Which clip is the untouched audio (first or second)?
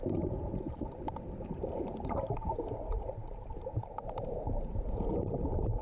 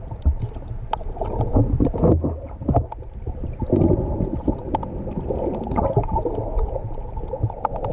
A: second